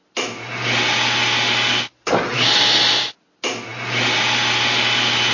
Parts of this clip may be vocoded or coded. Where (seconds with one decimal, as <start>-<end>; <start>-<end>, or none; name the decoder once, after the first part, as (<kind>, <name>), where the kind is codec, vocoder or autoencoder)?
none

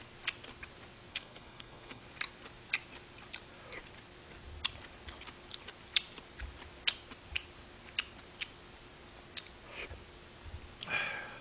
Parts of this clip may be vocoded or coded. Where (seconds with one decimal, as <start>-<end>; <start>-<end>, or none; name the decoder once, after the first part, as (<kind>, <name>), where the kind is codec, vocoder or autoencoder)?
1.1-2.0 (codec, SNAC)

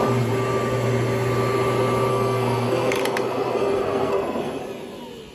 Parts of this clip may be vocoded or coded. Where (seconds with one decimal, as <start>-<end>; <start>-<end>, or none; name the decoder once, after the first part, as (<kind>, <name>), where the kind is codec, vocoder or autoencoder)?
2.1-4.6 (codec, SNAC)